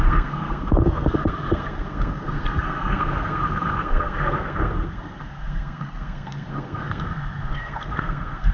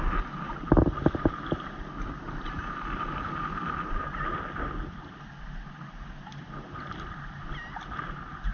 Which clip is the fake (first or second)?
first